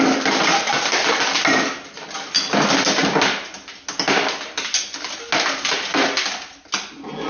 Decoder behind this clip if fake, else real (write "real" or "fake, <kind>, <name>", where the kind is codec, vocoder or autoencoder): real